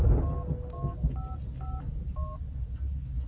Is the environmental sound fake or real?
real